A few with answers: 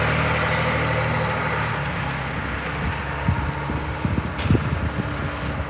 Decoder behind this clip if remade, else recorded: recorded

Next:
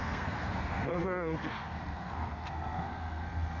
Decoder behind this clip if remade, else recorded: remade, codec, SNAC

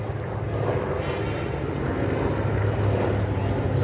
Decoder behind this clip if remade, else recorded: recorded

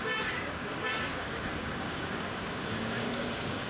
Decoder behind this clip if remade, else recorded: remade, codec, DAC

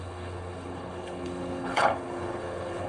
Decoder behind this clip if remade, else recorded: remade, codec, HILCodec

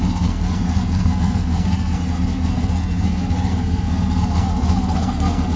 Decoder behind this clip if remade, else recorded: remade, codec, SNAC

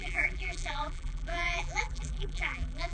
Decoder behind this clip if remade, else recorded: remade, vocoder, BigVGAN v2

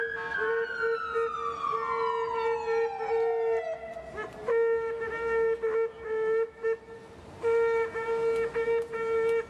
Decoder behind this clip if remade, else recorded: recorded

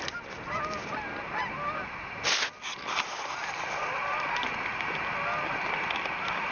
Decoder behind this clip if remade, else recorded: recorded